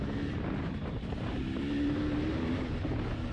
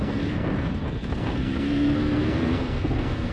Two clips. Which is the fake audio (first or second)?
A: second